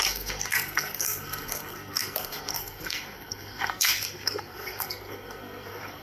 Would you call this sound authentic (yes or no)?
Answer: no